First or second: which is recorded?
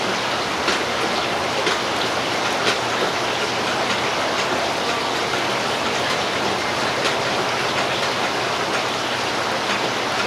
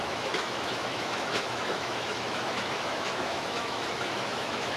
first